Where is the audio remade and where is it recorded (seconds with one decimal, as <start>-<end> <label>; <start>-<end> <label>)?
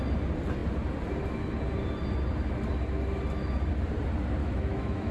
0.0-4.4 recorded; 4.4-5.1 remade